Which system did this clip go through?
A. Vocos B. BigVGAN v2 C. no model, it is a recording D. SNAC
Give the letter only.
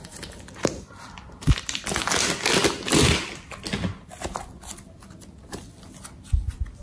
C